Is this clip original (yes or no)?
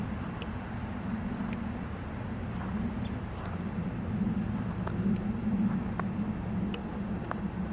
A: yes